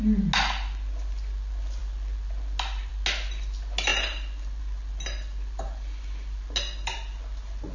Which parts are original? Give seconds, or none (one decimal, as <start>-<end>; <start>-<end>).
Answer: 0.0-7.7